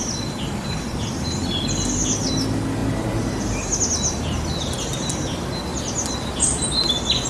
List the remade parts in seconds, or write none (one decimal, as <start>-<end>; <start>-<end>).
none